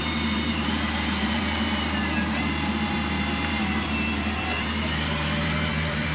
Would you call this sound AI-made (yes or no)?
yes